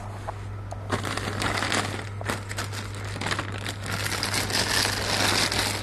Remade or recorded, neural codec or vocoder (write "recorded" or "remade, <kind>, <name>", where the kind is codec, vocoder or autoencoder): recorded